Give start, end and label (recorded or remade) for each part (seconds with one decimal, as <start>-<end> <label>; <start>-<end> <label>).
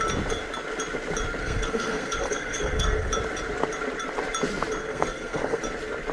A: 0.0-1.4 recorded; 1.4-3.1 remade; 3.1-4.8 recorded; 4.8-5.6 remade; 5.6-6.1 recorded